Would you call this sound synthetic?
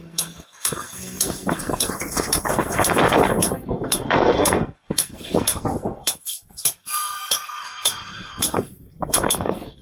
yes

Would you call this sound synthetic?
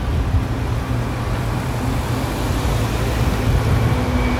no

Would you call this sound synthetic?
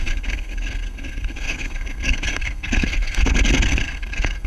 yes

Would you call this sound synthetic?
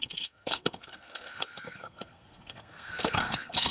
yes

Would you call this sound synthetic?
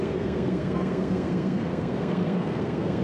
yes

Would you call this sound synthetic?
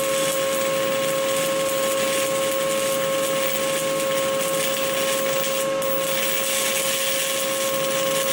no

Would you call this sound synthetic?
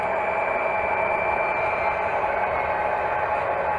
no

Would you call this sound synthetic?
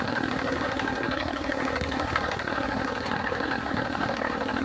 yes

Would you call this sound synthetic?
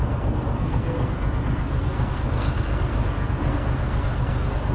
yes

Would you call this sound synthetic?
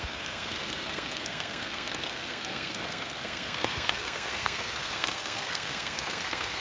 yes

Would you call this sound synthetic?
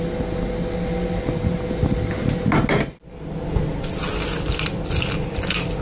no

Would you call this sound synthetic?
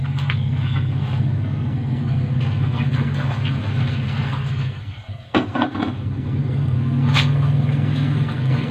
yes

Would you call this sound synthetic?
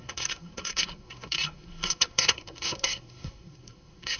yes